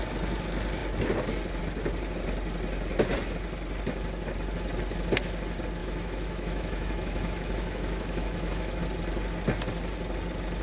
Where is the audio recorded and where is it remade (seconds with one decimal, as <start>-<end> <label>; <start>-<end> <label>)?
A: 0.0-5.8 recorded; 5.8-8.8 remade; 8.8-10.6 recorded